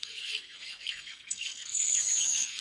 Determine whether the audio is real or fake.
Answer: fake